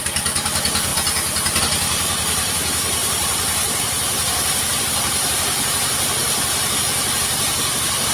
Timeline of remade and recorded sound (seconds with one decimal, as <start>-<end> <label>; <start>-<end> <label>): 0.0-0.9 remade; 0.9-1.6 recorded; 1.6-8.1 remade